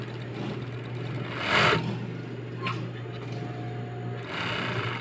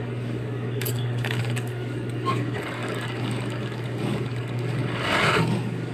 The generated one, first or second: second